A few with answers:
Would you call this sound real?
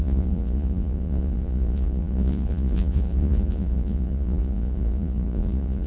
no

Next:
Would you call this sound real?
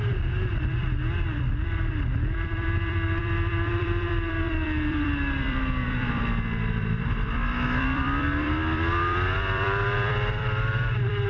no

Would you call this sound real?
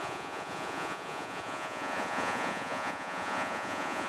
no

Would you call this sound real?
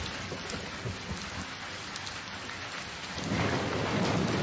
yes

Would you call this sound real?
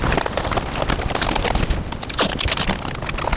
yes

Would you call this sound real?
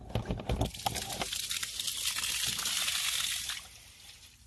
yes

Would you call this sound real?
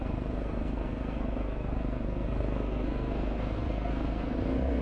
no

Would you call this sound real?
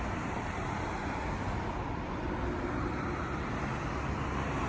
no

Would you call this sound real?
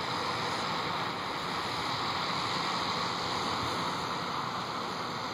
yes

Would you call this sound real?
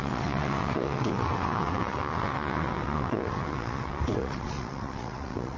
no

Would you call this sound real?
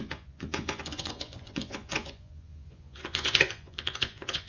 no